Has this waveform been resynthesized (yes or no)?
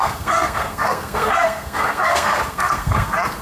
yes